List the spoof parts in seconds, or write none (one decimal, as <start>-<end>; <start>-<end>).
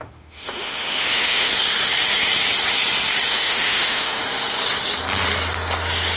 0.0-1.5; 3.3-4.2